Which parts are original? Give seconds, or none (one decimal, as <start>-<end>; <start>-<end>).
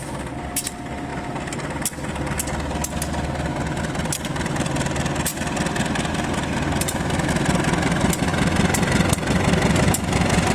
0.0-10.5